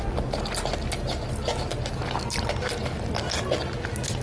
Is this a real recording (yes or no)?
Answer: yes